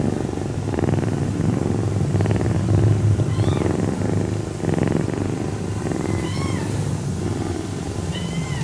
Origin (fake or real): real